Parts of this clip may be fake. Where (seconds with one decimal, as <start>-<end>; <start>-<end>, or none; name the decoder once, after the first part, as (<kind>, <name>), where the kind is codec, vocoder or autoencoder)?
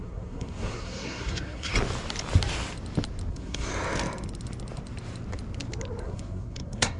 0.0-1.7 (codec, SNAC); 3.3-3.7; 6.0-7.0